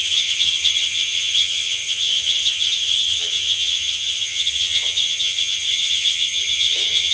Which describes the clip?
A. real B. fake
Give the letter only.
B